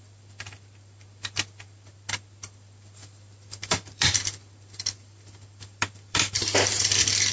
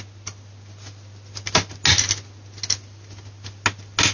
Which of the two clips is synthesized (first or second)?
first